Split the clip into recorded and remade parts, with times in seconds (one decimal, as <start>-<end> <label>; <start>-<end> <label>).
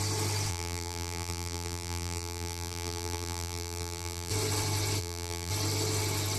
0.0-0.5 recorded; 0.5-4.3 remade; 4.3-5.0 recorded; 5.0-5.5 remade; 5.5-6.4 recorded